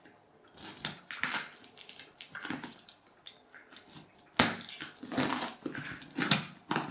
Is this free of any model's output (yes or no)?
yes